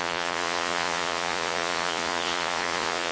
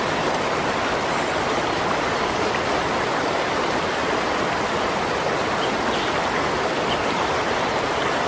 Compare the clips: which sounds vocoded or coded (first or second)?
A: first